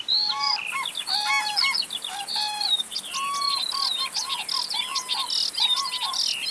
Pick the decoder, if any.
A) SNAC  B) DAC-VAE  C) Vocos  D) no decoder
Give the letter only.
D